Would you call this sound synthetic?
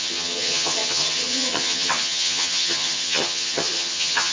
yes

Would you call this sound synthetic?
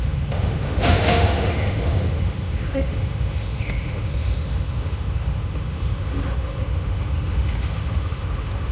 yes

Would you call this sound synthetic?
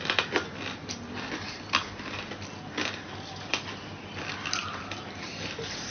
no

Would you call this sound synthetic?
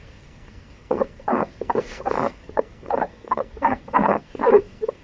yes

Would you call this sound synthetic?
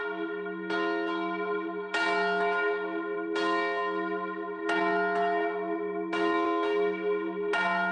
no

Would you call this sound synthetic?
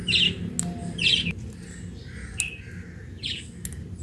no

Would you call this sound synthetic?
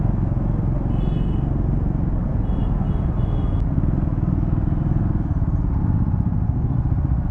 no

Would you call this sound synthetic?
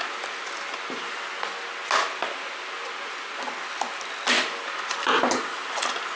no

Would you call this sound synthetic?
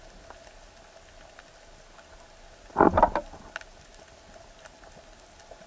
no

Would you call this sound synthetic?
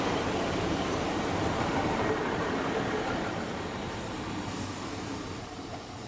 yes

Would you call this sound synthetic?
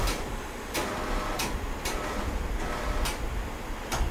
no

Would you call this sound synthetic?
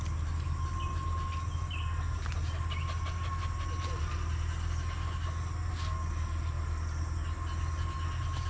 no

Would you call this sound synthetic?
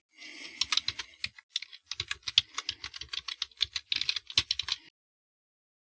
no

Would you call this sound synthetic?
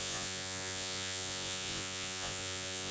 yes